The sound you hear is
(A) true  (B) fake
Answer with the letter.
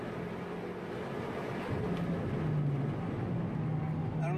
A